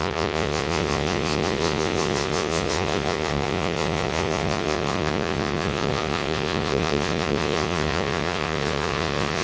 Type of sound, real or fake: fake